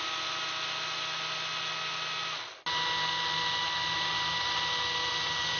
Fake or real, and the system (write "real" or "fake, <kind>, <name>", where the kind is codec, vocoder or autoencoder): real